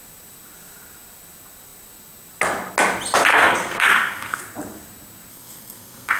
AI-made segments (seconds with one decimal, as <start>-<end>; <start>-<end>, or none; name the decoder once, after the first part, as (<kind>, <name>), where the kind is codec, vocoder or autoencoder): 3.3-4.4 (codec, SNAC); 5.3-6.2